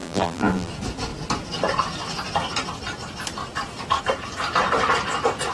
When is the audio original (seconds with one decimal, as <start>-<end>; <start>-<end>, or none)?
0.7-5.5